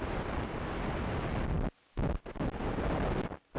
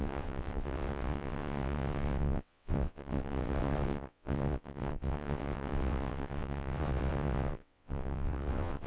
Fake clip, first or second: second